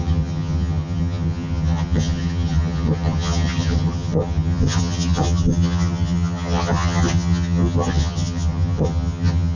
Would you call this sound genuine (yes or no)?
no